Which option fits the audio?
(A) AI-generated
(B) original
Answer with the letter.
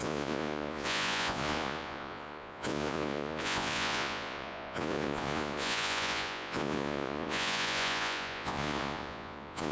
A